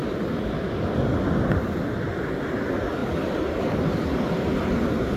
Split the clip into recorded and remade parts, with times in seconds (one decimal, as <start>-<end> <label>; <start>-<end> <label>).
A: 0.0-2.2 remade; 2.2-3.0 recorded; 3.0-4.6 remade; 4.6-5.2 recorded